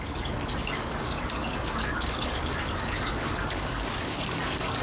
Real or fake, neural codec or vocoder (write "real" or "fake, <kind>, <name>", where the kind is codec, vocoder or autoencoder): fake, codec, DAC